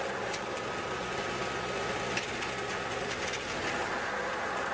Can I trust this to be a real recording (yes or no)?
yes